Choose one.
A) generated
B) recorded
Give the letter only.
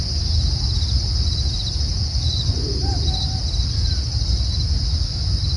B